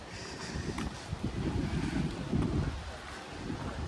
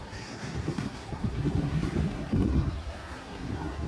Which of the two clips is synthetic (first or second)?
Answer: second